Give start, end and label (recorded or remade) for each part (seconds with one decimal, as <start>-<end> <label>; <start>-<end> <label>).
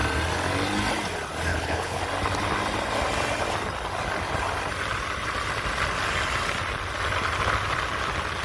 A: 0.0-1.5 recorded; 1.5-2.0 remade; 2.0-8.4 recorded